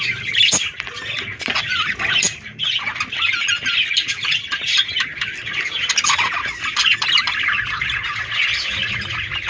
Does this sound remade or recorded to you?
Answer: recorded